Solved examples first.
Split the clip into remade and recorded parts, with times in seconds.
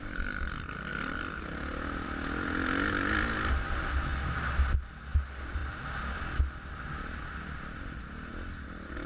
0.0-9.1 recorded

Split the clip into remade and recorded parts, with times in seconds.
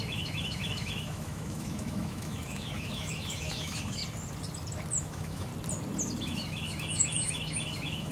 0.0-4.0 remade; 4.0-5.0 recorded; 5.0-5.5 remade; 5.5-6.2 recorded; 6.2-8.1 remade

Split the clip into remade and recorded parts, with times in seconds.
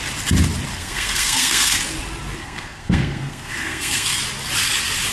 0.0-0.7 recorded; 0.7-1.8 remade; 1.8-2.4 recorded; 2.4-4.2 remade; 4.2-5.1 recorded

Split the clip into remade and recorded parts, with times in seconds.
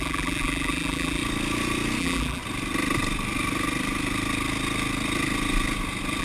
0.0-1.2 remade; 1.2-2.0 recorded; 2.0-2.4 remade; 2.4-6.2 recorded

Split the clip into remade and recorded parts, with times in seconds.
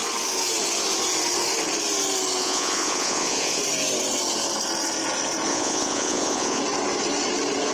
0.0-2.4 recorded; 2.4-3.6 remade; 3.6-5.5 recorded; 5.5-6.6 remade; 6.6-7.7 recorded